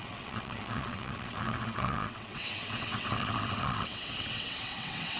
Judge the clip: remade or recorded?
remade